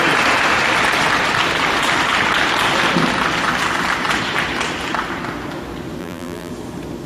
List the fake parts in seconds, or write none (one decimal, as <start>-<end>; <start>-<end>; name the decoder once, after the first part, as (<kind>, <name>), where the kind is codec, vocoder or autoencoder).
6.0-6.5 (vocoder, BigVGAN v2)